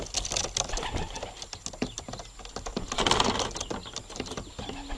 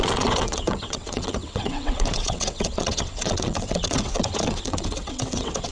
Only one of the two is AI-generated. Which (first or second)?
second